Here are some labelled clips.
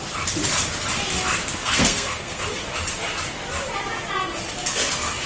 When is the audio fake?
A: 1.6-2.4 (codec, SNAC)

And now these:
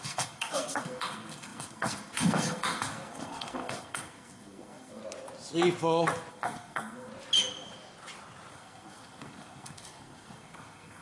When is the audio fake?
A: 0.0-5.0 (codec, SNAC); 6.3-7.1; 8.5-11.0

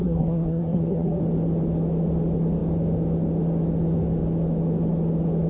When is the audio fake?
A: 0.0-1.2 (codec, SNAC)

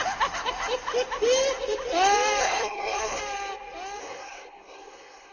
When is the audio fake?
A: 2.4-3.2 (codec, SNAC); 4.0-5.3

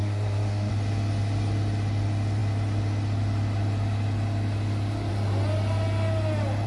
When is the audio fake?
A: 0.0-0.7 (codec, SNAC)

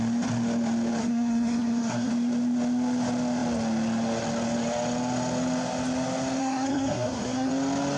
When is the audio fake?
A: 1.0-2.1 (codec, SNAC); 6.4-7.5

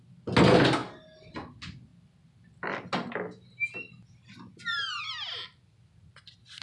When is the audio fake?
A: none